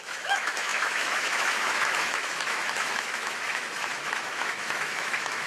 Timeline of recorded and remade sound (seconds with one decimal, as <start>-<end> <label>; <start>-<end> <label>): 0.0-5.5 remade